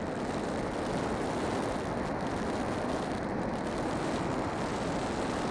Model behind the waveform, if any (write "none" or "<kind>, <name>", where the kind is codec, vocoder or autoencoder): none